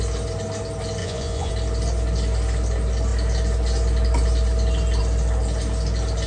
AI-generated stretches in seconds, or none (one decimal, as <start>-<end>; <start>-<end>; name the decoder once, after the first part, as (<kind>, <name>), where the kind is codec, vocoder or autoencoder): 1.0-1.5 (vocoder, Vocos)